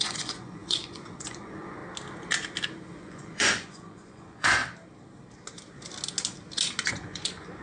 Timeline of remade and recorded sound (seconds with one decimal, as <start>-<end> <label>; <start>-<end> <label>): 0.0-1.8 remade; 1.8-3.0 recorded; 3.0-4.6 remade; 4.6-6.8 recorded; 6.8-7.6 remade

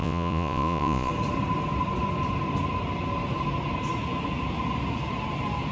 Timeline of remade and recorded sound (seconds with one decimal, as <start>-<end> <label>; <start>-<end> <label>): 0.0-1.1 remade; 1.1-5.7 recorded

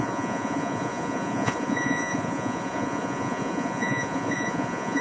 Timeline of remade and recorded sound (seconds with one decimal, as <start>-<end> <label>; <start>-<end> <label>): 0.0-5.0 remade

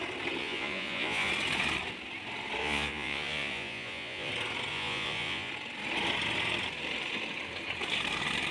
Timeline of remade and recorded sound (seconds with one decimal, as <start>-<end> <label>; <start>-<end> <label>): 0.0-0.4 recorded; 0.4-1.3 remade; 1.3-2.6 recorded; 2.6-4.3 remade; 4.3-4.7 recorded; 4.7-5.5 remade; 5.5-8.5 recorded